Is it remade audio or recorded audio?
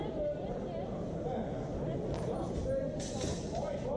remade